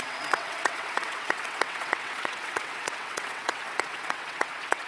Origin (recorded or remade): remade